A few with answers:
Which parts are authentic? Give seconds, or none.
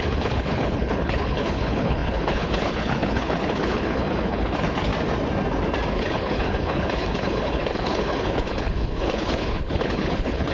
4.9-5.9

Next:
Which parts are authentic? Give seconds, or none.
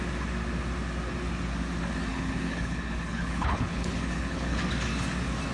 0.0-2.1; 4.6-5.5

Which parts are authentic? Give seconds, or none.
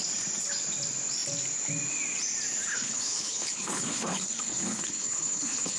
0.0-2.7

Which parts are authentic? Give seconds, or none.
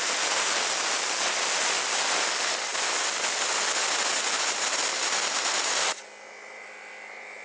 0.0-7.4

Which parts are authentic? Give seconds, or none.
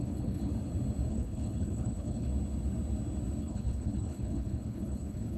0.5-1.1; 2.3-3.4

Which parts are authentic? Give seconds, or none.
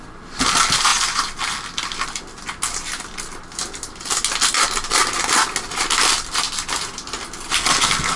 0.0-8.2